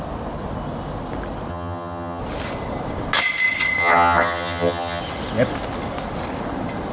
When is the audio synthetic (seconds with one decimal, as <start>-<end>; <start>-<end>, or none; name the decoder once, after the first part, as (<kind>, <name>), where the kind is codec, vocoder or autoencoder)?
1.5-2.2 (vocoder, HiFi-GAN); 3.8-5.0